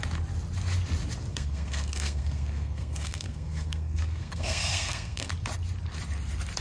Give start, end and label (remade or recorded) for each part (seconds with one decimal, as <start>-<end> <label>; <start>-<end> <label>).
0.0-1.3 recorded; 1.3-5.3 remade; 5.3-6.6 recorded